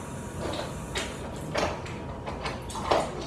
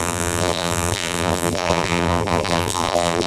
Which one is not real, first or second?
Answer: second